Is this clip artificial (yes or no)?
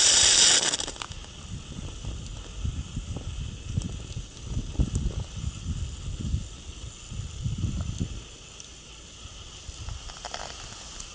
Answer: no